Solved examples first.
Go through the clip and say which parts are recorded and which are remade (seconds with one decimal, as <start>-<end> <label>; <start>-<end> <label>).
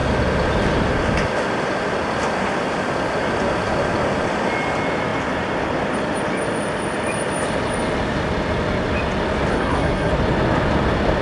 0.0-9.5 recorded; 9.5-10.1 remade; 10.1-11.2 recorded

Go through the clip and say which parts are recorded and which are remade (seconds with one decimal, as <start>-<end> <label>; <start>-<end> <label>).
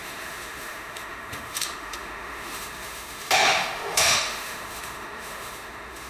0.0-6.1 remade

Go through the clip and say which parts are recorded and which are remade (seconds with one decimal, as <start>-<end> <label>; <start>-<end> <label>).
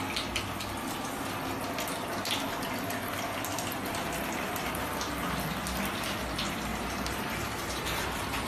0.0-6.7 recorded; 6.7-8.5 remade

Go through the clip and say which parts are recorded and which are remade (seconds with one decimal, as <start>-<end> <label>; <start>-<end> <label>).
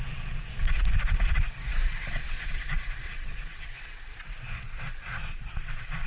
0.0-6.1 remade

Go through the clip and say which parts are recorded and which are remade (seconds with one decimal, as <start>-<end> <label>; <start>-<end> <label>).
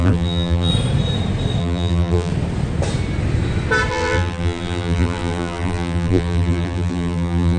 0.0-0.7 remade; 0.7-1.6 recorded; 1.6-2.3 remade; 2.3-3.9 recorded; 3.9-7.6 remade